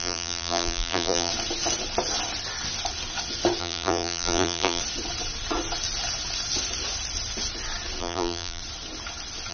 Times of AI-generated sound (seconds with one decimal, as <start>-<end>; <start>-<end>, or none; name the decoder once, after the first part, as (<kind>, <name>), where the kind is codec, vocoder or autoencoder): 0.0-1.3 (vocoder, BigVGAN v2); 3.6-4.8; 8.0-8.6